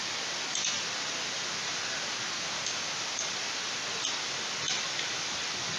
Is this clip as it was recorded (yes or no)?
yes